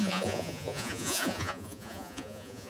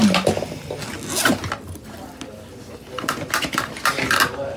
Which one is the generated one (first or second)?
first